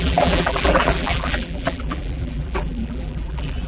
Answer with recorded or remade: remade